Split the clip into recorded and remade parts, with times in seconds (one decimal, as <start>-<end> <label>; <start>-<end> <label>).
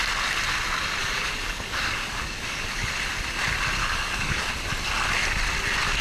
0.0-1.0 recorded; 1.0-2.9 remade; 2.9-3.8 recorded; 3.8-4.5 remade; 4.5-6.0 recorded